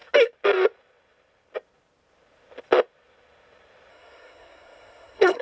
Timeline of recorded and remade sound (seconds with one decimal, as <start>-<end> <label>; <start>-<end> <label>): 0.0-3.9 recorded; 3.9-5.4 remade